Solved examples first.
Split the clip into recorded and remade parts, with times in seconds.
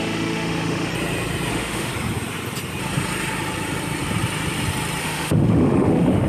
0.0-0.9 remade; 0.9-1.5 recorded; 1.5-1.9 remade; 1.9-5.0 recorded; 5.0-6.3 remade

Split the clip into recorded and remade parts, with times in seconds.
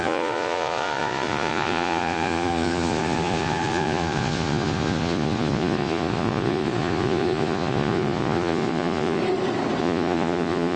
0.0-9.2 remade; 9.2-9.8 recorded; 9.8-10.8 remade